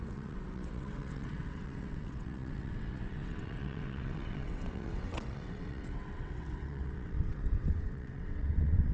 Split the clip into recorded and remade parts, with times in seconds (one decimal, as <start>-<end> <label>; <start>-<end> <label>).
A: 0.0-8.9 remade